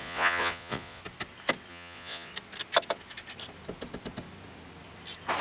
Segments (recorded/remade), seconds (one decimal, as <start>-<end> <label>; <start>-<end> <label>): 0.0-1.0 remade; 1.0-1.7 recorded; 1.7-2.3 remade; 2.3-5.4 recorded